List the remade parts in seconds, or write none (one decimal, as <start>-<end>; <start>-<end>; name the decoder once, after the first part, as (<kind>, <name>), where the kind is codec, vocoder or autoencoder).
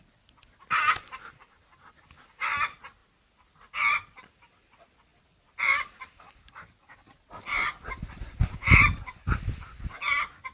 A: none